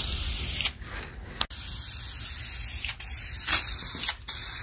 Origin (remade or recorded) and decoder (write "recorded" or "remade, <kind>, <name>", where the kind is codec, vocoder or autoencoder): recorded